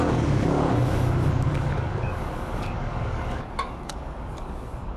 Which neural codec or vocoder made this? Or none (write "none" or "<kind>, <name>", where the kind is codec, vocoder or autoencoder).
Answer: codec, DAC